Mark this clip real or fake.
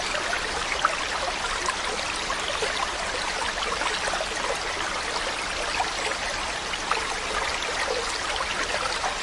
real